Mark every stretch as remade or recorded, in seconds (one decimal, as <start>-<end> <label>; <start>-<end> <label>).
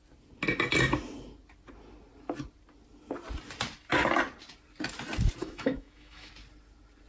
0.0-5.4 recorded; 5.4-6.3 remade; 6.3-7.1 recorded